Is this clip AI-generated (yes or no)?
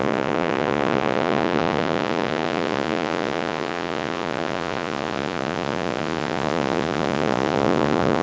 yes